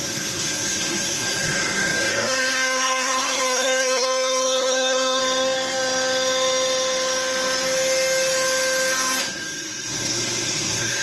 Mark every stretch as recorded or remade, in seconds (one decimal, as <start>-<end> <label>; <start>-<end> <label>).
0.0-5.2 remade; 5.2-9.2 recorded; 9.2-11.0 remade